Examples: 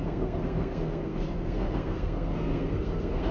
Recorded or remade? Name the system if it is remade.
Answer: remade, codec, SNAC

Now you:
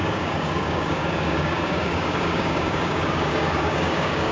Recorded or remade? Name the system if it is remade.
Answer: remade, codec, DAC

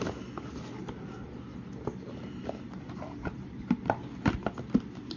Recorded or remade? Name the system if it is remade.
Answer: recorded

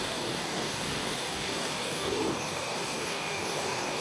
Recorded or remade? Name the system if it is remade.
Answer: remade, codec, DAC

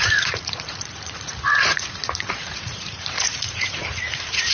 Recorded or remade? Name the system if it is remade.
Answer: remade, vocoder, Vocos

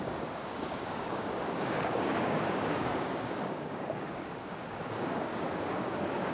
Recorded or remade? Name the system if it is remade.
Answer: remade, codec, DAC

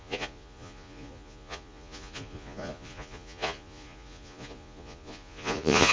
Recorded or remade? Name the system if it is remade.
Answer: remade, vocoder, Vocos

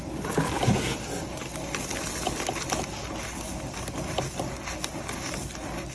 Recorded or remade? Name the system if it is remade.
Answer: recorded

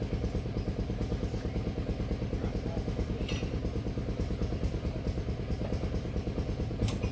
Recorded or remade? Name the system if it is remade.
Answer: recorded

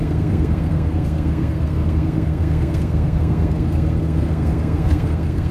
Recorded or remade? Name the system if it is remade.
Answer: remade, codec, SNAC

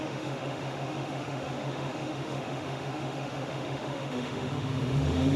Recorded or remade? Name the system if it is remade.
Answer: remade, autoencoder, DAC-VAE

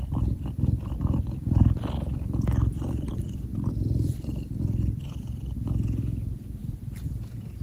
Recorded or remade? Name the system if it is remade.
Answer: remade, vocoder, BigVGAN v2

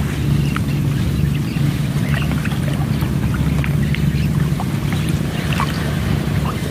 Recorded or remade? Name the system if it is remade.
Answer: recorded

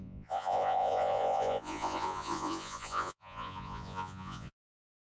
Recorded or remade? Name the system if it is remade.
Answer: remade, vocoder, Vocos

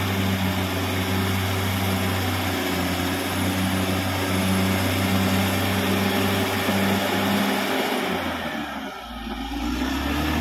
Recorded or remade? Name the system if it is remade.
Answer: recorded